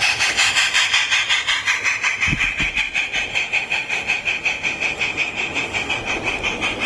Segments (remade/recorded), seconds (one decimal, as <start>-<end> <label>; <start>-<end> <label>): 0.0-3.3 recorded; 3.3-5.9 remade; 5.9-6.9 recorded